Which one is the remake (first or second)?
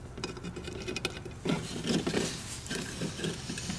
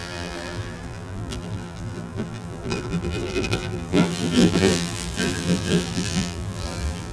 second